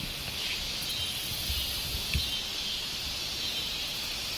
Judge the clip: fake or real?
real